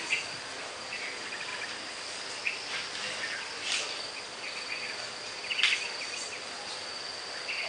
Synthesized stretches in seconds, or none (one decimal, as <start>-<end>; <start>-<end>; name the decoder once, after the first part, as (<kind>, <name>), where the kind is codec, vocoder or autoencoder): none